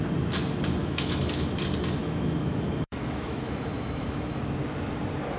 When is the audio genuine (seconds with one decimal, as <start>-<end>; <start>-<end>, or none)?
0.0-0.8; 1.5-2.0; 4.4-5.4